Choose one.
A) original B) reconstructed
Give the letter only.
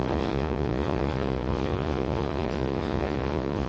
B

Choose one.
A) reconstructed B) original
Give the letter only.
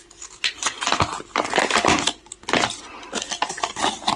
B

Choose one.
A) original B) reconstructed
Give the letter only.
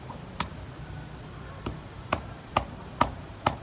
B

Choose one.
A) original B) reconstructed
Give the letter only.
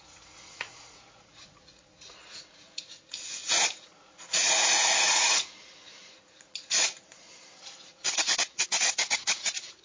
B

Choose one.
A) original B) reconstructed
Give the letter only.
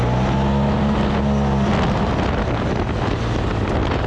A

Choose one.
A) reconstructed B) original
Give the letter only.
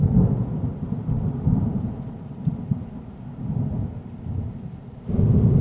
B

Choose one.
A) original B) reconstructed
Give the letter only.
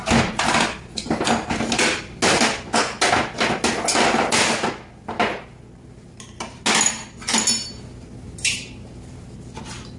A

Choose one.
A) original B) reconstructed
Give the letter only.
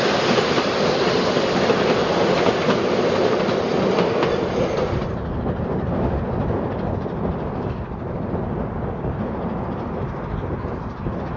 A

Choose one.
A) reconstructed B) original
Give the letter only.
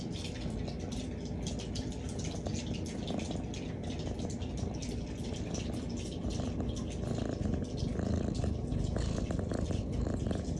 B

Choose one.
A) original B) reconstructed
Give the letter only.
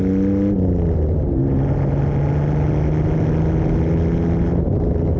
A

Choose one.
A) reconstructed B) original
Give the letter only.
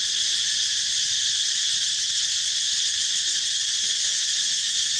B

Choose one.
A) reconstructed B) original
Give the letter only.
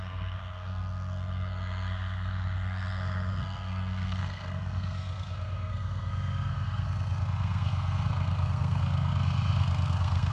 A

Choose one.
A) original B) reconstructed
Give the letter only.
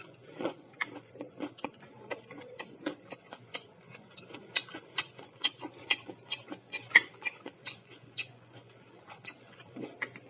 B